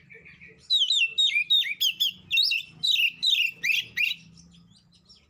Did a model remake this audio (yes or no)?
no